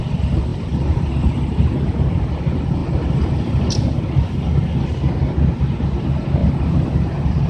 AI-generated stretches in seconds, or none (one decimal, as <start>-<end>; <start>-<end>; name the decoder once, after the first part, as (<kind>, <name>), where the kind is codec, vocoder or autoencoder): 0.5-1.1 (vocoder, BigVGAN v2); 2.8-3.7; 6.4-7.5